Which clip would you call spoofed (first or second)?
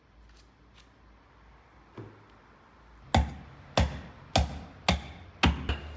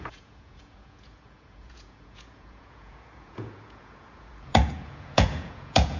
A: second